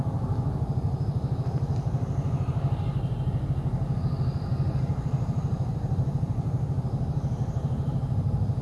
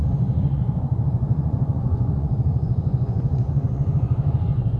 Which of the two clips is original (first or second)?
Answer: first